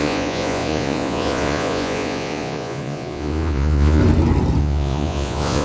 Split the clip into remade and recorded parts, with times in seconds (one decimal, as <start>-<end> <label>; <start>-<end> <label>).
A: 0.0-4.0 remade; 4.0-4.6 recorded; 4.6-5.6 remade